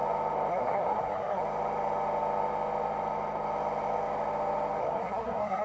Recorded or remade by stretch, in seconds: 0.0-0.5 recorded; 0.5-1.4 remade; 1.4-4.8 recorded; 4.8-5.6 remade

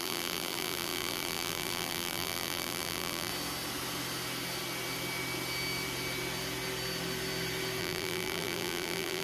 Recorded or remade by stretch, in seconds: 0.0-3.3 remade; 3.3-7.8 recorded; 7.8-9.2 remade

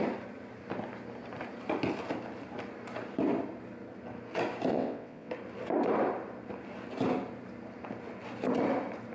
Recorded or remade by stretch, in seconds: 0.0-4.7 recorded; 4.7-5.3 remade; 5.3-9.1 recorded

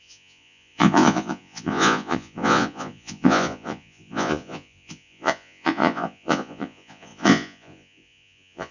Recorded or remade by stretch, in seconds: 0.0-8.7 remade

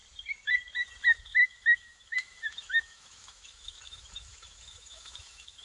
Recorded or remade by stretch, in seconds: 0.0-1.2 recorded; 1.2-5.6 remade

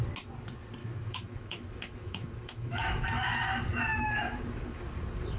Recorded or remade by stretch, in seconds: 0.0-0.8 recorded; 0.8-3.1 remade; 3.1-3.9 recorded; 3.9-4.8 remade; 4.8-5.4 recorded

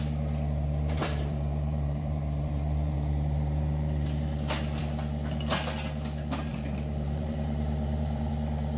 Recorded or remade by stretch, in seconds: 0.0-1.0 recorded; 1.0-4.8 remade; 4.8-6.5 recorded; 6.5-8.3 remade; 8.3-8.8 recorded

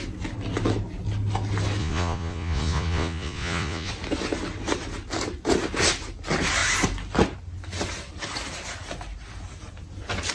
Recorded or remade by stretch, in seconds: 0.0-1.8 recorded; 1.8-3.9 remade; 3.9-10.3 recorded